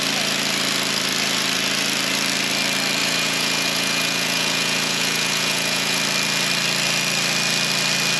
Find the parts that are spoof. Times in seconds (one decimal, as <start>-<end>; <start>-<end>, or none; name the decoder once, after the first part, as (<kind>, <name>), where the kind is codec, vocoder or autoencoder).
3.0-6.0 (vocoder, Vocos)